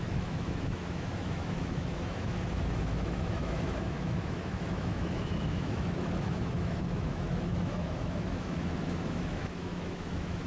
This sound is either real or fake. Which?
fake